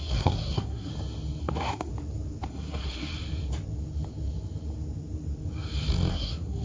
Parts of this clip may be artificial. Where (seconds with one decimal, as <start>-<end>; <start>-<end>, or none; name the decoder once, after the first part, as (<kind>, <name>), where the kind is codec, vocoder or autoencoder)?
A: 0.0-0.9 (codec, SNAC); 1.4-1.9; 2.5-3.1; 6.1-6.6